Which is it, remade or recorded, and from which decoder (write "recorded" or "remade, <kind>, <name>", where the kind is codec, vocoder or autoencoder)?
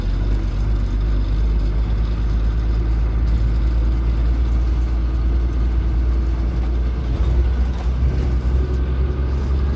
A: recorded